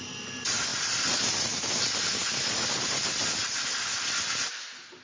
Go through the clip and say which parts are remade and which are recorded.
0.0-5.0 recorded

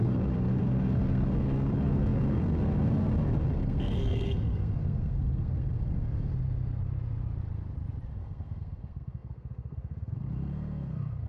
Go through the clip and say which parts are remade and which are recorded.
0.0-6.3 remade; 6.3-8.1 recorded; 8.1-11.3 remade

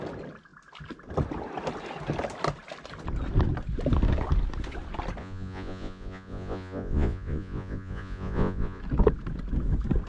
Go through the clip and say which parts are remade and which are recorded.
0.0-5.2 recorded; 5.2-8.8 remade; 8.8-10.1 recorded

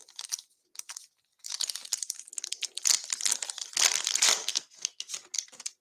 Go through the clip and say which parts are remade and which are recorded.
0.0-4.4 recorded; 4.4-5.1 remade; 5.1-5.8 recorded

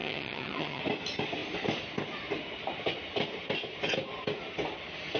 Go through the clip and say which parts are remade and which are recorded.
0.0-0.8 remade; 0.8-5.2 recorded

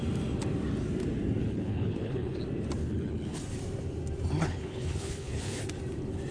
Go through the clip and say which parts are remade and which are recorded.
0.0-1.4 recorded; 1.4-2.4 remade; 2.4-2.8 recorded; 2.8-3.4 remade; 3.4-4.4 recorded; 4.4-5.6 remade; 5.6-6.3 recorded

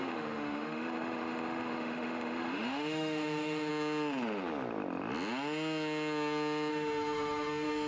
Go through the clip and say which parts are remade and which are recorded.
0.0-3.7 remade; 3.7-6.7 recorded; 6.7-7.9 remade

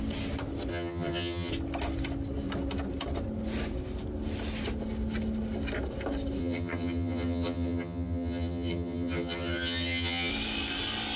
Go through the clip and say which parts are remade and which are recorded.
0.0-0.7 recorded; 0.7-1.5 remade; 1.5-6.4 recorded; 6.4-10.3 remade; 10.3-11.2 recorded